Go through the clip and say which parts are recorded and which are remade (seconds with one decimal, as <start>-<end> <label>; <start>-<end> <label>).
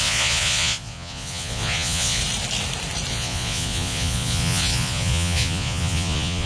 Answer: 0.0-2.2 remade; 2.2-3.1 recorded; 3.1-6.5 remade